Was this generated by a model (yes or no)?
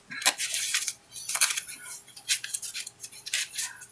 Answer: no